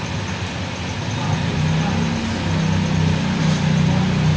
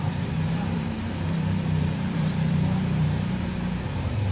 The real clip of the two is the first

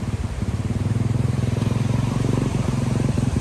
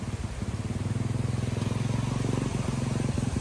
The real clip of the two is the second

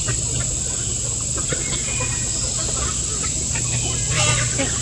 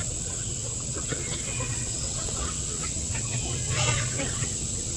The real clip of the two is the first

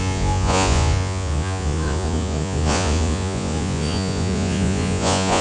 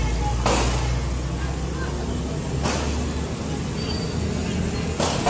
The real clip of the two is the second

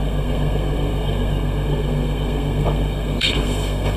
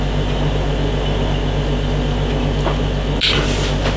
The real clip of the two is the second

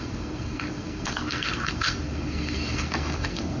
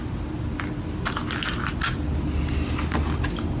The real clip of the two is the second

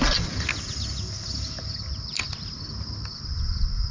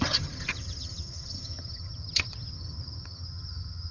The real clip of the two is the first